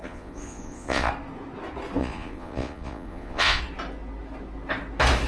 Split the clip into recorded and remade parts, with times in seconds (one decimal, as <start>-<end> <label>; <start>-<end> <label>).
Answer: 0.0-1.1 remade; 1.1-2.0 recorded; 2.0-3.6 remade; 3.6-5.3 recorded